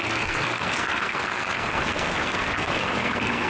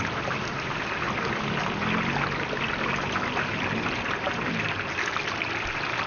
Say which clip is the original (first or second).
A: second